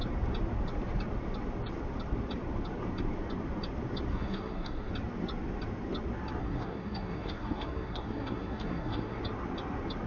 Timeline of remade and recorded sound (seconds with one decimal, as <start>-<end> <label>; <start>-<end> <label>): 0.0-4.1 recorded; 4.1-4.9 remade; 4.9-6.4 recorded; 6.4-9.2 remade; 9.2-10.1 recorded